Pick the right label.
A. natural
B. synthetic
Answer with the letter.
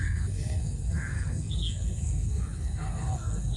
B